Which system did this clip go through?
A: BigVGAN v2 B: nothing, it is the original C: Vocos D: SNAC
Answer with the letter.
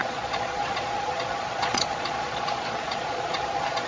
C